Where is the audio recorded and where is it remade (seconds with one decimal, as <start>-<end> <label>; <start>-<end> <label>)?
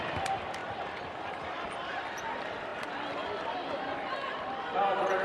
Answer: 0.0-5.2 remade